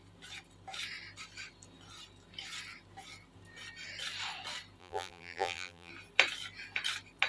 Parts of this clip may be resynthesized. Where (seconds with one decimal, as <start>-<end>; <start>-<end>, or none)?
4.8-5.9